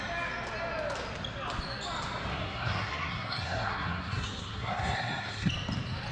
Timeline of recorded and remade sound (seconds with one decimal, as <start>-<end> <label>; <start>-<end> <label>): 0.0-2.3 recorded; 2.3-5.5 remade; 5.5-6.1 recorded